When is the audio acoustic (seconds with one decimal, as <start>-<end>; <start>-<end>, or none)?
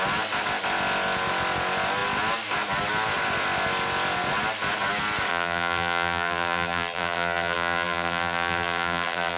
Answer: 0.0-5.3